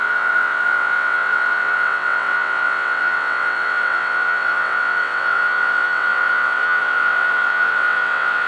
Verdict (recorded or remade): remade